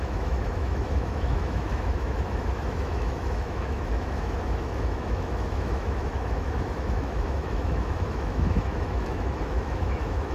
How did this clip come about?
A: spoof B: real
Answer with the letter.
A